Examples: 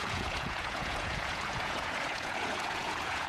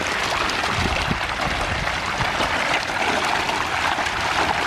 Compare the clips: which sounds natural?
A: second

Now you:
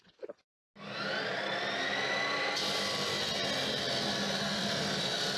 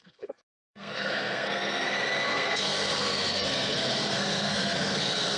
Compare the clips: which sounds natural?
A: first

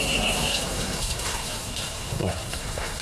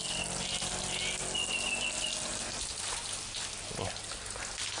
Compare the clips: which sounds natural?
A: second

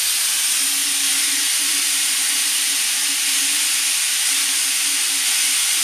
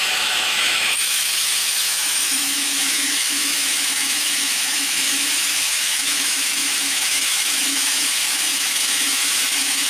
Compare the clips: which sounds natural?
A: first